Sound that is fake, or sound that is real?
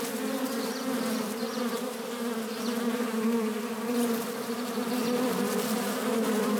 fake